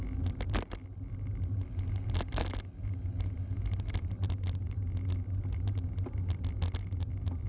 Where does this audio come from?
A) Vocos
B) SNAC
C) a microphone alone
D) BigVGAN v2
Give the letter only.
C